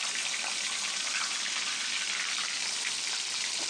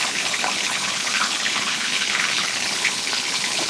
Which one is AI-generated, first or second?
second